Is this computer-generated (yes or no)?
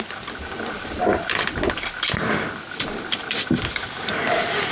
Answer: no